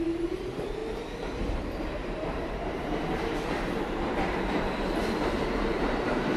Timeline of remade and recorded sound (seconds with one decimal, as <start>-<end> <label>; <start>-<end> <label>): 0.0-6.4 remade